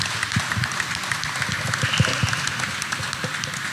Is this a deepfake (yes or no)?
no